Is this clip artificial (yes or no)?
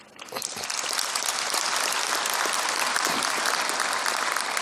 no